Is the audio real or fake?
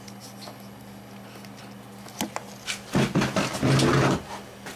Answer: real